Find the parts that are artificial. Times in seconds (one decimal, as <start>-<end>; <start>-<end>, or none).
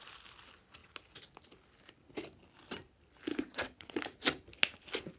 3.3-4.0